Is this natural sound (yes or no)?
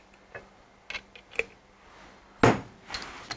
yes